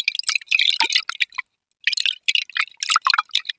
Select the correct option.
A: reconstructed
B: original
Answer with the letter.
B